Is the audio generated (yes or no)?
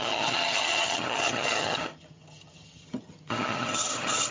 yes